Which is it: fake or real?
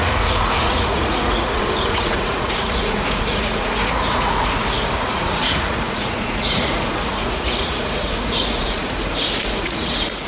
fake